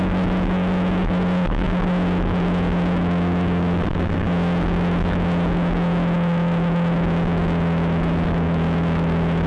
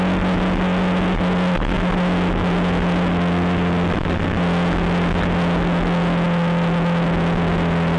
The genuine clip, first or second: second